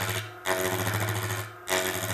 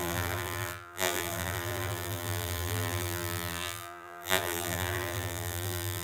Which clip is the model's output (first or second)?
second